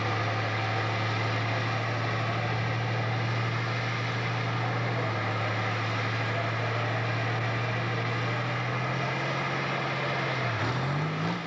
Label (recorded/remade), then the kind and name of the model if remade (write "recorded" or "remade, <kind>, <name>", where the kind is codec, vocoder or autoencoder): recorded